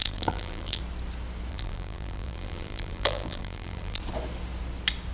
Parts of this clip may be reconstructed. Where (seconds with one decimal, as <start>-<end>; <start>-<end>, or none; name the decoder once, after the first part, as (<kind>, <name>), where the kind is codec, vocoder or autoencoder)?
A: 0.0-0.8 (vocoder, BigVGAN v2); 1.5-4.0